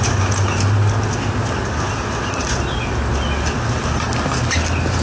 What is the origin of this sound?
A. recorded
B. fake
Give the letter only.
A